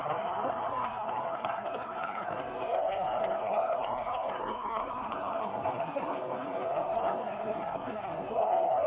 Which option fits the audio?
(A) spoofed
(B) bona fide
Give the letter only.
A